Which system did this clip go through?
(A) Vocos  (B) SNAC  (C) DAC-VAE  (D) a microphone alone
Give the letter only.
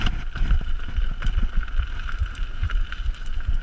D